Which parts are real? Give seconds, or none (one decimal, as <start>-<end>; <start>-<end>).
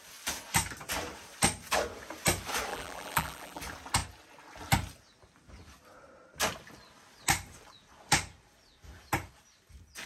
0.0-2.7; 3.6-10.1